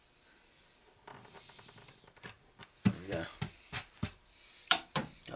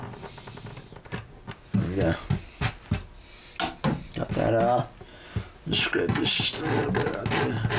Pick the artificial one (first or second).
first